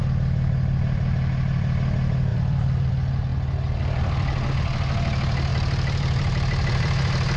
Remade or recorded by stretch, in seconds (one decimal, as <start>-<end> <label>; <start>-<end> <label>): 0.0-2.3 recorded; 2.3-2.9 remade; 2.9-5.5 recorded; 5.5-7.0 remade; 7.0-7.4 recorded